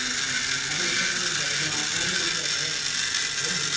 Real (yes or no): yes